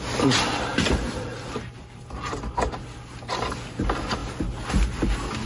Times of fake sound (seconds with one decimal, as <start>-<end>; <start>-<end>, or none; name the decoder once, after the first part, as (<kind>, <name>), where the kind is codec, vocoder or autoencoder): none